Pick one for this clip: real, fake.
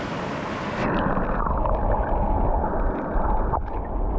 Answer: real